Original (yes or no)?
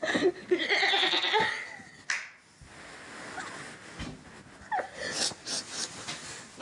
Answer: yes